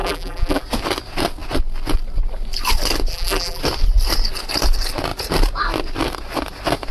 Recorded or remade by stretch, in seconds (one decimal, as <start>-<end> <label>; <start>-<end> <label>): 0.0-0.6 remade; 0.6-3.1 recorded; 3.1-3.6 remade; 3.6-6.9 recorded